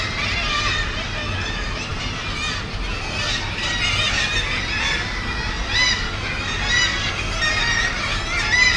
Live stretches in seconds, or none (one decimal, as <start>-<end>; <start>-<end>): 0.0-8.8